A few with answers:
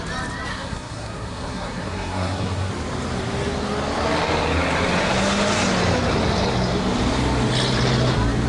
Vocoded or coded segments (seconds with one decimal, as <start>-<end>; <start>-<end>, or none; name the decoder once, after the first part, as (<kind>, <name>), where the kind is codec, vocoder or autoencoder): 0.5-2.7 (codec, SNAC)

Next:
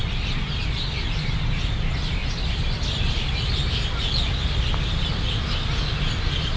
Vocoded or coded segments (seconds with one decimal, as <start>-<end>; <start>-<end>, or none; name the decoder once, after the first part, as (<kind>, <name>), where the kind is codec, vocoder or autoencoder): none

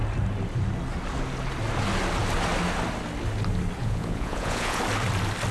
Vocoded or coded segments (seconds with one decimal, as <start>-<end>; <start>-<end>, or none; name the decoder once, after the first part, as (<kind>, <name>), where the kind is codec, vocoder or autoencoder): 3.8-4.8 (vocoder, Vocos)

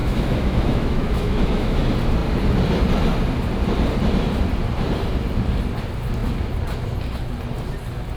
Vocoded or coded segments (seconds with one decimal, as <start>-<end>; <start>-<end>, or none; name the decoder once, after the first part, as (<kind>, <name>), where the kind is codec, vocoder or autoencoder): 0.0-1.8 (autoencoder, DAC-VAE)